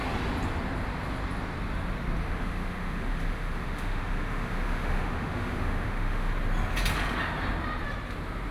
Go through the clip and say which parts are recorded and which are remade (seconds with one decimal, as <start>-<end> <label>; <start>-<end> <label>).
0.0-2.2 recorded; 2.2-6.3 remade; 6.3-8.5 recorded